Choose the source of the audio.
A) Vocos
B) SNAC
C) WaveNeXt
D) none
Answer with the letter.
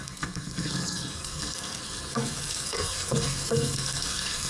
B